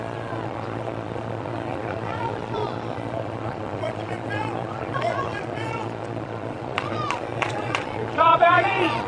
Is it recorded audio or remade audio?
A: remade